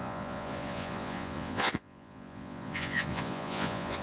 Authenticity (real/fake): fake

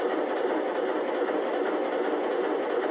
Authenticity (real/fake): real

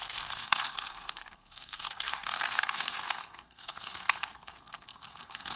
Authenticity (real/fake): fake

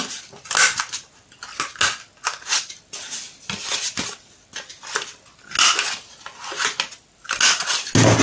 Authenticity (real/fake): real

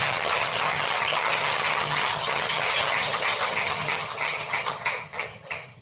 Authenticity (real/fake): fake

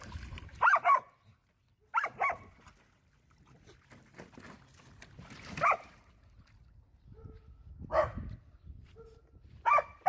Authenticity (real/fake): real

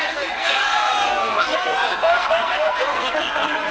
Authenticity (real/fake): fake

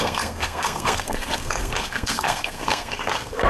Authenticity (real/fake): fake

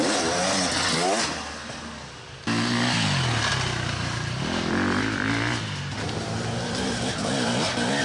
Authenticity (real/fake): real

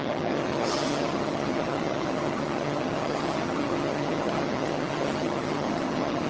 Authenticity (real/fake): fake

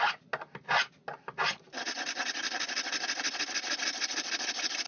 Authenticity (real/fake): real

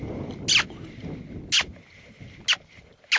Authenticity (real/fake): real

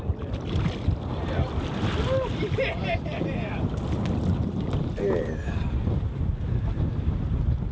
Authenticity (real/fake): real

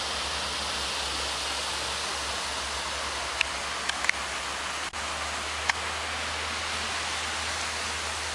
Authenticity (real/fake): real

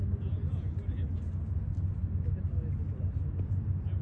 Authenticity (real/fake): real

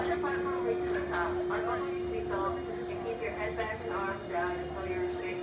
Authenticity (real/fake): real